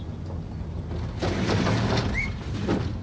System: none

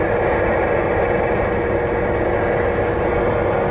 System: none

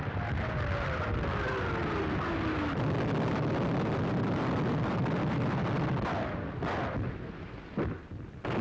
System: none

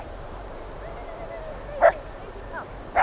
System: none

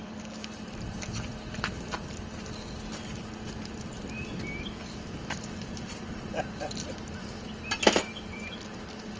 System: none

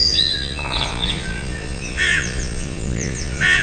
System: vocoder, Vocos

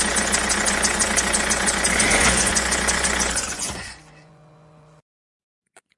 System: vocoder, Vocos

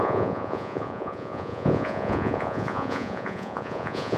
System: vocoder, Vocos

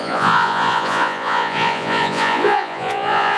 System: vocoder, Vocos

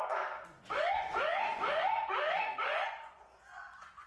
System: vocoder, Vocos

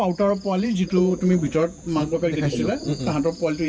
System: vocoder, Vocos